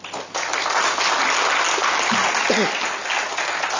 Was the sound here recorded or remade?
recorded